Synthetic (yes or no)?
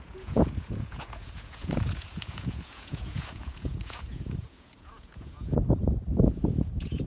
yes